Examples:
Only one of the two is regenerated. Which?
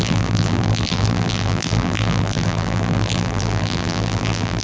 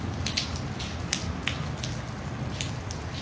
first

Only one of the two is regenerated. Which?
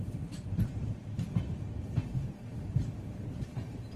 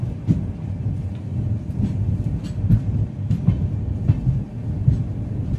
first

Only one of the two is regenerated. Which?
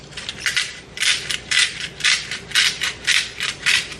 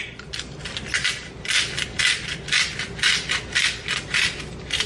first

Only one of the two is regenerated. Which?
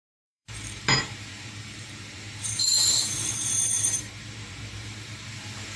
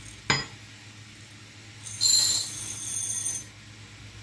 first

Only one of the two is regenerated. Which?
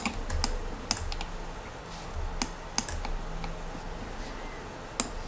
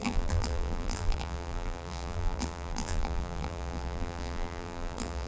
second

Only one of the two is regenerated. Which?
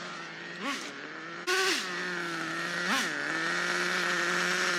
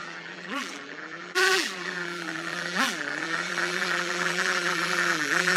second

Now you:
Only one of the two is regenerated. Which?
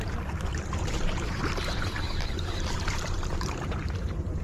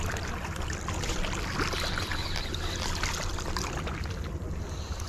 first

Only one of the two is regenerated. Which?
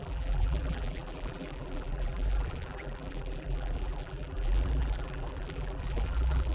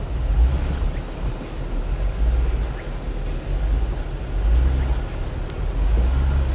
first